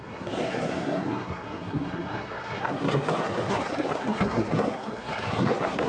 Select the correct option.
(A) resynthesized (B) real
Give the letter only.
A